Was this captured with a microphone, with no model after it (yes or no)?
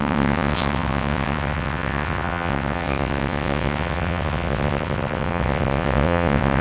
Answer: no